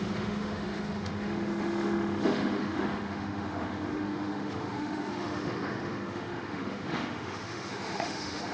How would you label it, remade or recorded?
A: remade